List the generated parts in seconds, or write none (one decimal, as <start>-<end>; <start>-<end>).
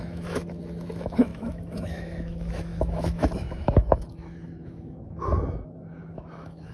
0.0-6.7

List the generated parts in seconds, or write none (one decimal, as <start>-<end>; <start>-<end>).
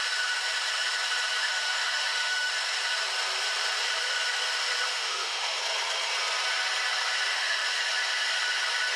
1.4-2.5; 4.9-5.6; 7.3-7.8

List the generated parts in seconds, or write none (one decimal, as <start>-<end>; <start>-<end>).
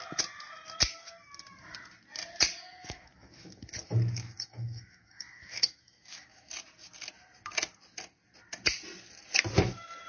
2.8-6.5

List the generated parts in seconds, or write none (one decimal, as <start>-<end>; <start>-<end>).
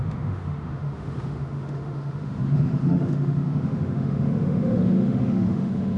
0.0-6.0